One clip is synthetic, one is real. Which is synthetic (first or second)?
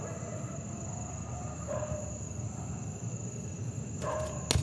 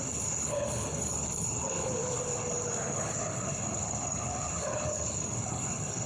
second